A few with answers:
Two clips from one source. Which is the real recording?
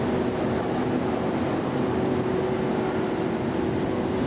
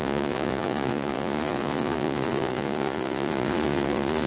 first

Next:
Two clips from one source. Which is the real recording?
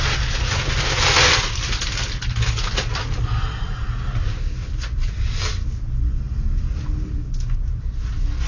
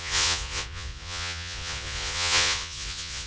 first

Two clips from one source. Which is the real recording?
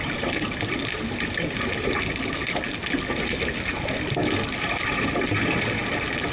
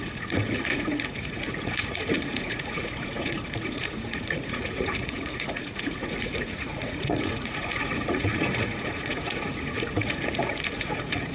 first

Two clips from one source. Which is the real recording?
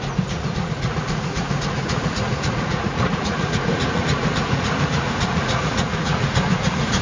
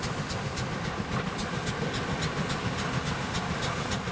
second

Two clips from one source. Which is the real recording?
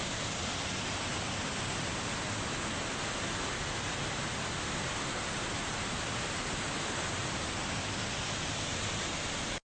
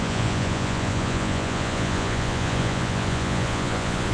first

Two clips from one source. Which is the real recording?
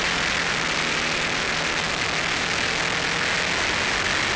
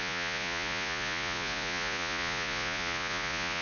first